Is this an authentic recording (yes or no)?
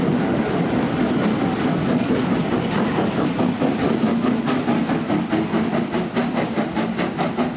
yes